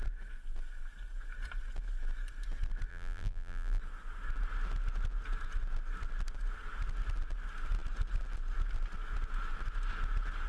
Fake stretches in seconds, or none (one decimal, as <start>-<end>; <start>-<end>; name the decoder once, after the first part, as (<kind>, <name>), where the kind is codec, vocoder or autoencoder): 2.9-3.8 (vocoder, BigVGAN v2)